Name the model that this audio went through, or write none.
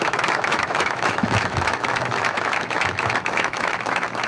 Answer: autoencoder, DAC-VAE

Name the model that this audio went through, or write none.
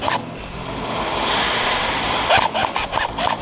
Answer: none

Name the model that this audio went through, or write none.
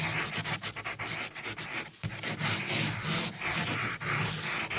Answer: none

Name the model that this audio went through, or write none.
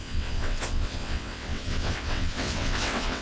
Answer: vocoder, WaveNeXt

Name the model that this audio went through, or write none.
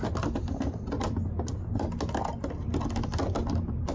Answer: none